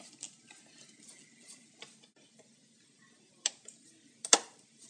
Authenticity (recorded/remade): recorded